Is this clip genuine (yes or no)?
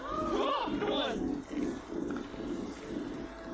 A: yes